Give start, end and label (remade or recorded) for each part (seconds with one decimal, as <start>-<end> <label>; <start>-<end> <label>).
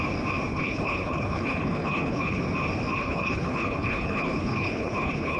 0.0-0.5 recorded; 0.5-2.4 remade; 2.4-2.9 recorded; 2.9-5.4 remade